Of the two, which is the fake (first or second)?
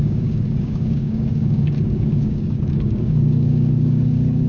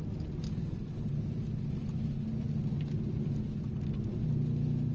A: first